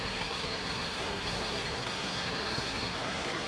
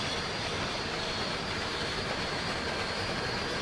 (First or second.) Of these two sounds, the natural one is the second